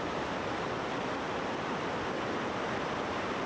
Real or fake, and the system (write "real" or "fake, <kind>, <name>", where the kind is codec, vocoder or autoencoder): real